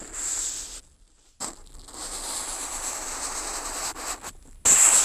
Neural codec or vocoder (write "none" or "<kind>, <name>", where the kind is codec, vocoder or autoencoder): none